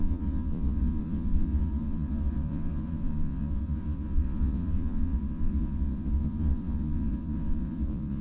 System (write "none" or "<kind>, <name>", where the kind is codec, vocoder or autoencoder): vocoder, Vocos